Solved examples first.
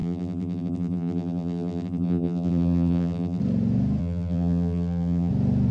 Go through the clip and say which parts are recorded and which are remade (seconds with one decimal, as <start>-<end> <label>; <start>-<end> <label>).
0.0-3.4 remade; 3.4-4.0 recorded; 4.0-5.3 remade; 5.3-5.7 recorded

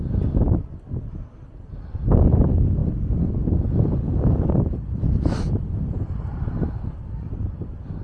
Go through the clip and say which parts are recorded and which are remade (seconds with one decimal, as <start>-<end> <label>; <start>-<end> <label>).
0.0-6.3 remade; 6.3-7.0 recorded; 7.0-8.0 remade

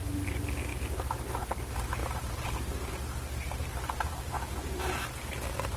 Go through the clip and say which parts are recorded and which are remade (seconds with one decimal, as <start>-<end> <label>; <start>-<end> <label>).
0.0-2.0 recorded; 2.0-2.9 remade; 2.9-3.6 recorded; 3.6-5.1 remade; 5.1-5.8 recorded

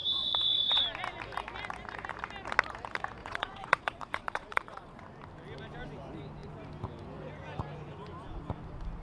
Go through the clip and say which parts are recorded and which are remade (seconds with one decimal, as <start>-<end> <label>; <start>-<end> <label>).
0.0-0.8 remade; 0.8-3.2 recorded; 3.2-5.0 remade; 5.0-9.0 recorded

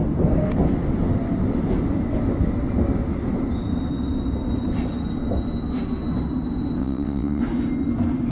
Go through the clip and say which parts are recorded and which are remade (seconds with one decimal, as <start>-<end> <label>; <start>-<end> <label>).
0.0-6.8 recorded; 6.8-7.4 remade; 7.4-8.3 recorded

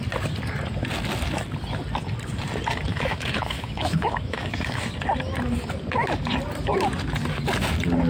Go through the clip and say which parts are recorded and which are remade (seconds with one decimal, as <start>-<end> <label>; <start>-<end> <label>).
0.0-2.9 recorded; 2.9-4.8 remade; 4.8-8.1 recorded

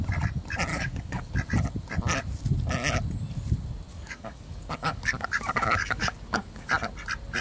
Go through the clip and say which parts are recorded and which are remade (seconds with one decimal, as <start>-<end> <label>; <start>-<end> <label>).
0.0-0.7 recorded; 0.7-1.3 remade; 1.3-3.9 recorded; 3.9-6.7 remade; 6.7-7.4 recorded

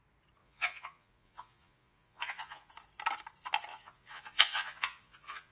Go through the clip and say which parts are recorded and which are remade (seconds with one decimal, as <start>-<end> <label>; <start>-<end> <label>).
0.0-0.4 recorded; 0.4-2.7 remade; 2.7-3.7 recorded; 3.7-5.5 remade